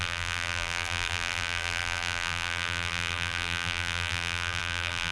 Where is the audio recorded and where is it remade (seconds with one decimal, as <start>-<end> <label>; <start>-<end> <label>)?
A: 0.0-5.1 remade